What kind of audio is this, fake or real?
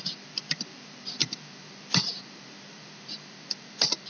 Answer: fake